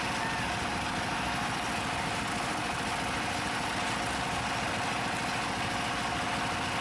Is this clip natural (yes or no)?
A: yes